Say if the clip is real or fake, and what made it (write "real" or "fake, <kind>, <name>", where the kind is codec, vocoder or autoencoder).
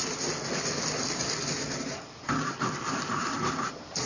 real